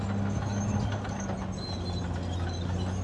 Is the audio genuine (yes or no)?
yes